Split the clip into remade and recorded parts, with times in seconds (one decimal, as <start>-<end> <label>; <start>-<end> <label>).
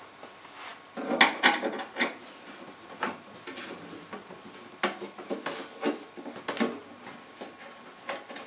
0.0-8.5 recorded